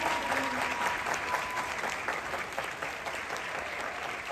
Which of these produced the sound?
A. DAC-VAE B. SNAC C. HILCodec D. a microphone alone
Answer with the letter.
D